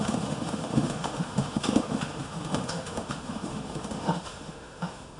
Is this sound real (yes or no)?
no